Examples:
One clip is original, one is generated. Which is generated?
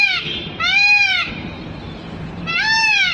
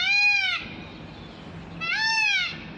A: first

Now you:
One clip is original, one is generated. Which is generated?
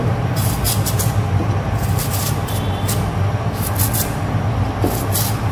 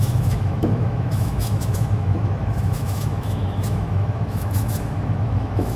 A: second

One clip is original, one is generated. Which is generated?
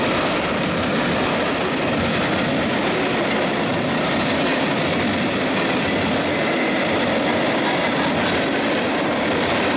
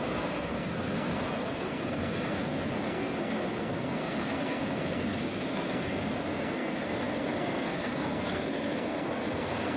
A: second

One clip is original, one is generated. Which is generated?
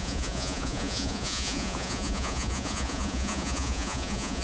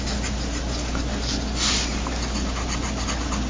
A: first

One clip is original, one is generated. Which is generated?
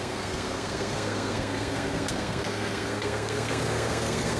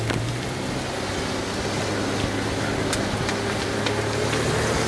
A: first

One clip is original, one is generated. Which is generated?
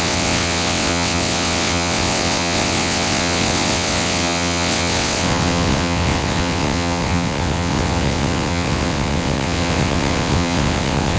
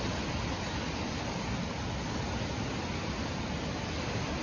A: first